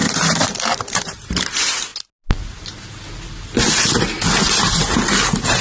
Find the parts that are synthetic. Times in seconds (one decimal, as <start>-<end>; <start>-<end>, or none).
0.0-1.4